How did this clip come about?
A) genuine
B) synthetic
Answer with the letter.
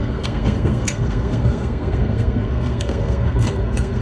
B